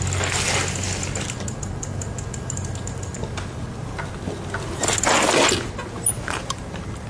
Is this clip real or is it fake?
real